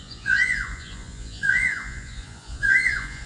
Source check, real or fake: fake